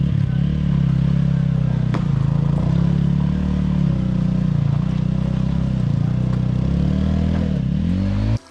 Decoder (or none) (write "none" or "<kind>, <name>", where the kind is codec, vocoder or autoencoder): none